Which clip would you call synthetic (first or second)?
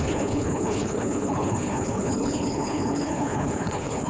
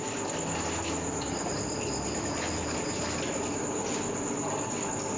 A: first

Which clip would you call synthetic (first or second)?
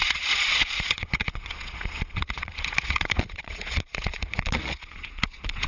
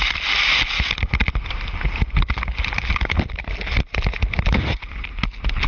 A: first